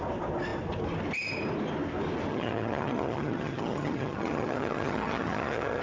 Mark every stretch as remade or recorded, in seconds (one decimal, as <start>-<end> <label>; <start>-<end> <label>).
0.0-2.3 recorded; 2.3-5.8 remade